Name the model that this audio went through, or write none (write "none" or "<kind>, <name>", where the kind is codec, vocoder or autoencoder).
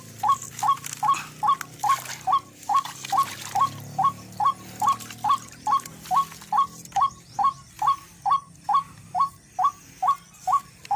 none